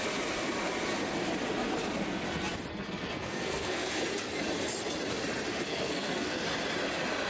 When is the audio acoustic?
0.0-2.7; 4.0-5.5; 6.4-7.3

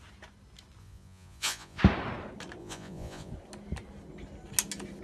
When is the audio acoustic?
0.0-0.8; 1.8-2.6; 3.3-5.0

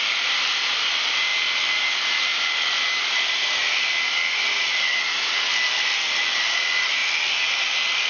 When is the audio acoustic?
2.3-3.0; 3.6-4.4; 7.0-8.1

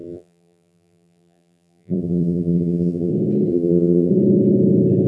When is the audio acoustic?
3.1-3.5; 4.1-5.1

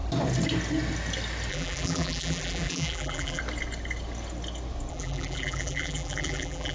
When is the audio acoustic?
0.0-1.5; 3.4-4.9

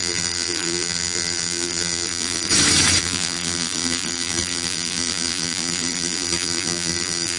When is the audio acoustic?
2.5-3.0